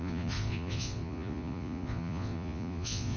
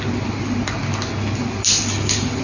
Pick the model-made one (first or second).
first